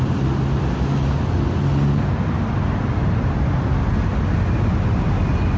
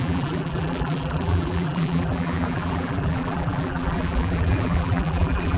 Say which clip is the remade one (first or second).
second